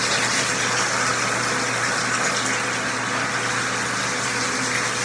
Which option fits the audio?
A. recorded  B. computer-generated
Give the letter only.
A